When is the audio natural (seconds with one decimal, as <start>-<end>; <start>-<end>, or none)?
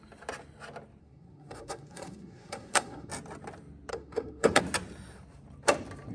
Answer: 0.0-1.0; 3.1-3.9; 4.6-6.1